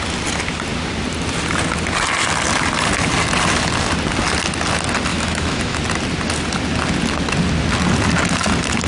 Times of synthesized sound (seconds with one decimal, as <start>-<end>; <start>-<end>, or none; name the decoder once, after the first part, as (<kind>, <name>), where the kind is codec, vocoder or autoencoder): 5.1-5.8 (autoencoder, DAC-VAE)